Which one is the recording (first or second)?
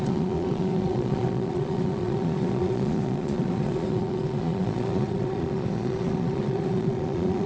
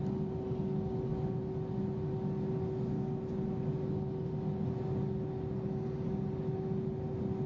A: second